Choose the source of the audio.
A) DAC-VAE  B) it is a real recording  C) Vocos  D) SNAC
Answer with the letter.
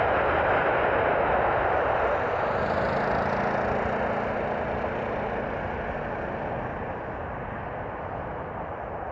B